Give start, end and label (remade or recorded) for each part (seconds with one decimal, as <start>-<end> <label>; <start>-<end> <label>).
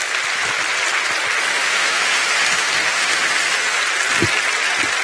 0.0-1.4 recorded; 1.4-3.8 remade; 3.8-5.0 recorded